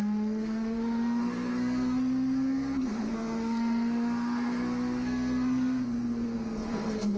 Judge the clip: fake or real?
fake